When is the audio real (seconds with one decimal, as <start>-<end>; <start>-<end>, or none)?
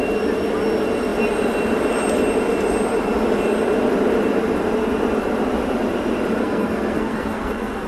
0.0-6.4